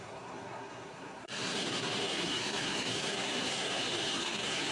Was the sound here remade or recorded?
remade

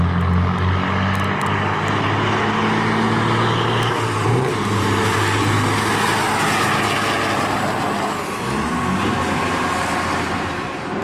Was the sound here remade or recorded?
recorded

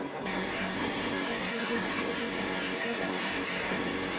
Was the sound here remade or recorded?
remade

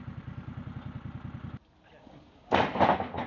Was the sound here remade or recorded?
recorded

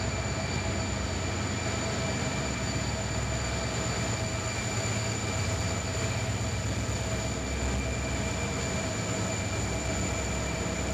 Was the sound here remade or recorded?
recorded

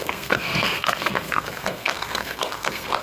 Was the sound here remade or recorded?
remade